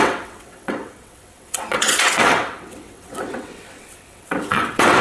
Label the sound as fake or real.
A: fake